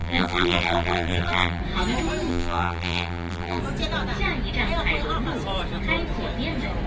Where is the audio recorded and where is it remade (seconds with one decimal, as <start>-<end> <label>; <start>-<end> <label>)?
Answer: 0.0-1.6 remade; 1.6-2.3 recorded; 2.3-3.6 remade; 3.6-6.9 recorded